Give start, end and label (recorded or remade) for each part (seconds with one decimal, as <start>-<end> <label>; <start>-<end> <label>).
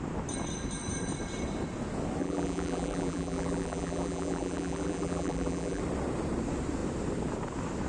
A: 0.0-2.2 recorded; 2.2-5.8 remade; 5.8-7.9 recorded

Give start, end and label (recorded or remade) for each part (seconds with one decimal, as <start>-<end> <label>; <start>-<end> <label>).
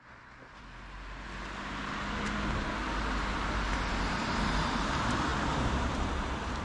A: 0.0-4.0 recorded; 4.0-6.6 remade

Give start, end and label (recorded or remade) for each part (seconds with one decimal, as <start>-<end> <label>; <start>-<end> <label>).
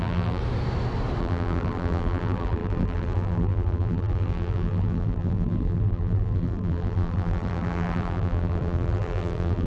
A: 0.0-0.4 remade; 0.4-1.2 recorded; 1.2-9.7 remade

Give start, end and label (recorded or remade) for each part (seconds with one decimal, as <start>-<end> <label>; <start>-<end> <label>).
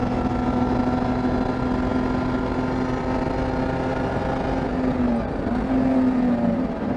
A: 0.0-7.0 recorded